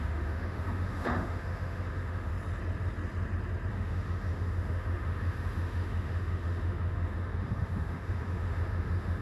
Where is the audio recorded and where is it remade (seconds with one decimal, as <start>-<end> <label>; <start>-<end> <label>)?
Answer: 0.0-2.3 remade; 2.3-3.7 recorded; 3.7-9.2 remade